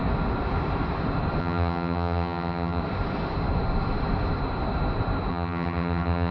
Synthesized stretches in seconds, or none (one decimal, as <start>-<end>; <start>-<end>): 1.4-2.8; 5.3-6.3